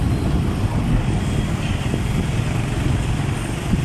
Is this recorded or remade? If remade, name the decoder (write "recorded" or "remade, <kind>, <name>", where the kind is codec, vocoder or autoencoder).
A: recorded